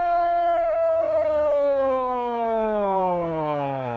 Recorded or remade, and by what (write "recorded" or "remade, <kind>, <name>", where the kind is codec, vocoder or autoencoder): remade, codec, SNAC